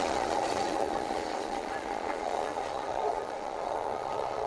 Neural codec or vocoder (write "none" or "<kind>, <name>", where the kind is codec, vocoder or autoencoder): vocoder, Vocos